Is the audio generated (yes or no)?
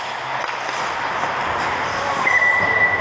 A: no